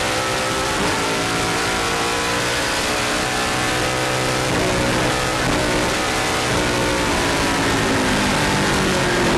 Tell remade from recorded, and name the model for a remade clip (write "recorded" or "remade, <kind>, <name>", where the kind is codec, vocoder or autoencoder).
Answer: recorded